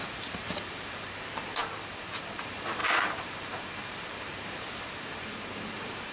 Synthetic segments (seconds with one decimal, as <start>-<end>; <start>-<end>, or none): 0.0-6.1